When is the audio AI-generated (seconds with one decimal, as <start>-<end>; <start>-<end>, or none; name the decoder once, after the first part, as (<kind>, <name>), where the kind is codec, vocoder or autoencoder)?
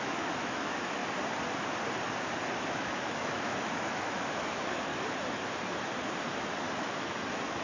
0.0-1.0 (autoencoder, DAC-VAE); 2.7-4.9; 6.7-7.6